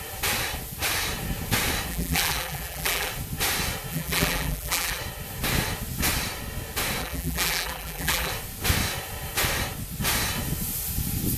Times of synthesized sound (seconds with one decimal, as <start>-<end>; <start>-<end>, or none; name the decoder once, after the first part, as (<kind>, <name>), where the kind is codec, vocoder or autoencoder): 1.9-3.1 (vocoder, BigVGAN v2); 3.9-5.0; 7.0-8.3